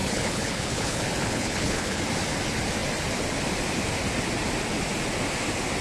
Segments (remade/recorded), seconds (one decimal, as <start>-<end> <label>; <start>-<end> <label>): 0.0-2.0 remade; 2.0-5.8 recorded